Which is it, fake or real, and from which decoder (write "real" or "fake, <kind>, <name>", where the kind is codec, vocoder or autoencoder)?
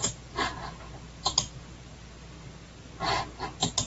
real